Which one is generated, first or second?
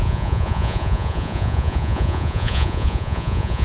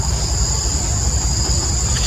first